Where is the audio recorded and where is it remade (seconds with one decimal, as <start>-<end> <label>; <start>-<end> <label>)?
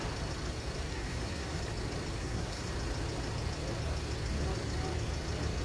0.0-0.9 recorded; 0.9-1.6 remade; 1.6-2.2 recorded; 2.2-2.7 remade; 2.7-5.6 recorded